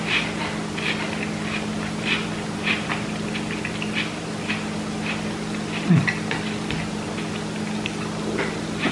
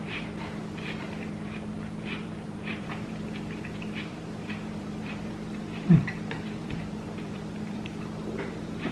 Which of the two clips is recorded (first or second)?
first